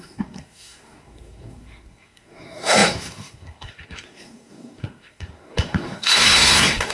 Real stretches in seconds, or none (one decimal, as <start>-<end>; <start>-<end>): none